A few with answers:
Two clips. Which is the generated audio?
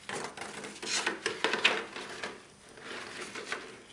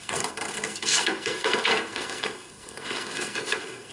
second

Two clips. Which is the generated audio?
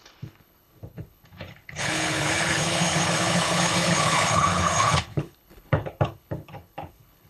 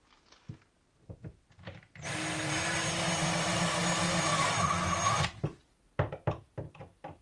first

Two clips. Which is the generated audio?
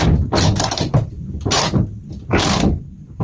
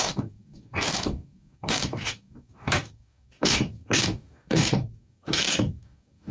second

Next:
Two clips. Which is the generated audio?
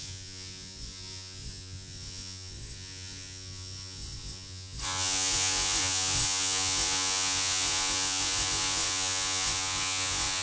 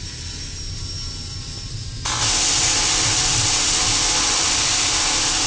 first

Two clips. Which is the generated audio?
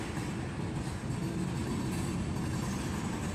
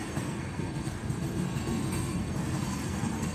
second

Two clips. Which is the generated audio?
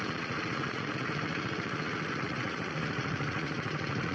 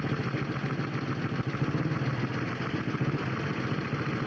first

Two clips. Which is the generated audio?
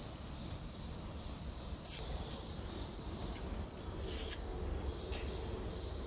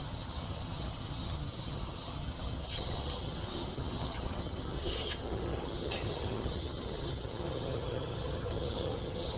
second